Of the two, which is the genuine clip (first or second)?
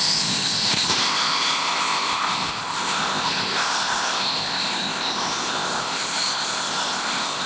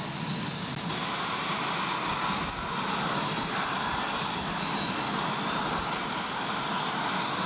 second